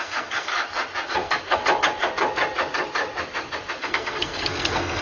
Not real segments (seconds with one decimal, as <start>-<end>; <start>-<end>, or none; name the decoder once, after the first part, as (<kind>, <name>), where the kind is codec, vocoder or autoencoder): 0.0-0.5 (codec, SNAC); 1.1-1.6; 3.8-5.0